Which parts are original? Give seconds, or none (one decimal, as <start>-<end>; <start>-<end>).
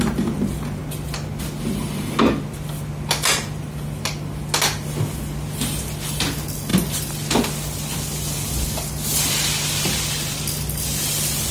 0.0-11.5